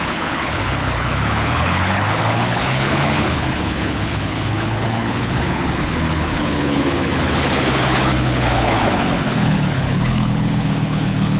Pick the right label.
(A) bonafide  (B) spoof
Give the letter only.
B